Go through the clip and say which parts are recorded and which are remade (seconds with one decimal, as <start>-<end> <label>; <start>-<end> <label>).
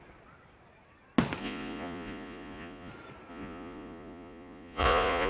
0.0-1.4 recorded; 1.4-2.9 remade; 2.9-3.3 recorded; 3.3-5.3 remade